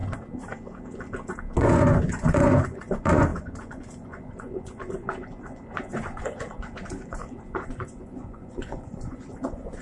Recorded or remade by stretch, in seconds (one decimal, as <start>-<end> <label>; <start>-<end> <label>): 0.0-1.6 recorded; 1.6-9.8 remade